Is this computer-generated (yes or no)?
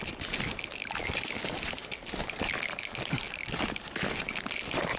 no